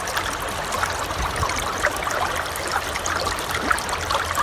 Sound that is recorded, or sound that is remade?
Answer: recorded